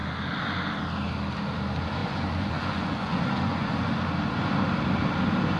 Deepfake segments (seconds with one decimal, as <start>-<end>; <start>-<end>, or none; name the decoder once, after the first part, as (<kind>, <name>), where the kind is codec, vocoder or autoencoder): 2.0-3.9 (vocoder, Vocos)